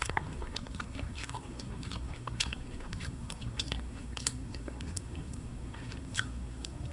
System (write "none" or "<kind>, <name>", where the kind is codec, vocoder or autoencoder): codec, SNAC